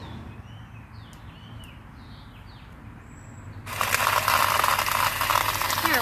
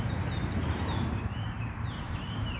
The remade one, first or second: second